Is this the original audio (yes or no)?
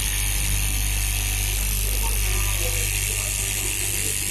yes